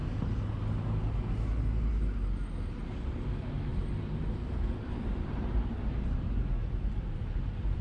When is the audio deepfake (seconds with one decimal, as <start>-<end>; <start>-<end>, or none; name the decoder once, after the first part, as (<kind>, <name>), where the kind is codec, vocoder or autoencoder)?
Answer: 3.7-7.8 (vocoder, BigVGAN v2)